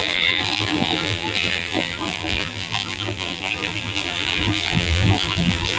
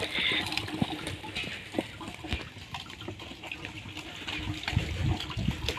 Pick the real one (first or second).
second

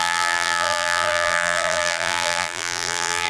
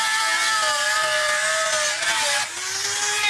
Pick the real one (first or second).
second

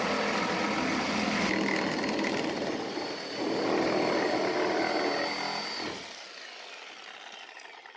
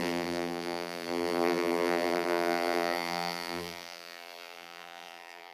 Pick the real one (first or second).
first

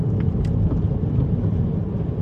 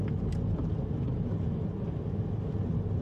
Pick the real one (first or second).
second